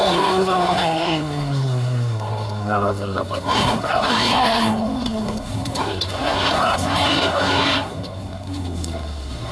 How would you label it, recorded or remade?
remade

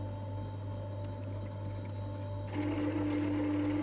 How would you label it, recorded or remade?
recorded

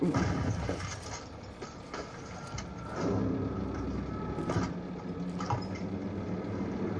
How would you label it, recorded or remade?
recorded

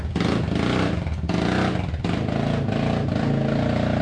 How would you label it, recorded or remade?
recorded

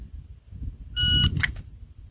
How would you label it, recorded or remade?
recorded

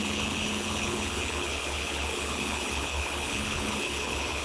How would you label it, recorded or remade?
remade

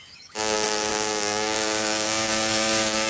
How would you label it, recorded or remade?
remade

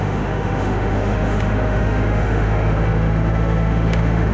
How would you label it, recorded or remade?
remade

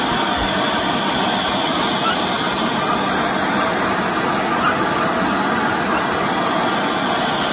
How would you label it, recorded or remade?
recorded